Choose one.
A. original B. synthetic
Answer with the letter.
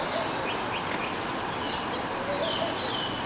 A